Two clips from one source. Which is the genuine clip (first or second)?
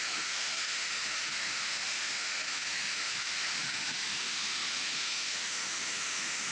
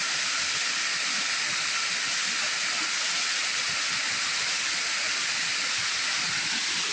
second